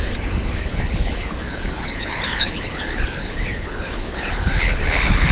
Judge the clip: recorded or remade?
remade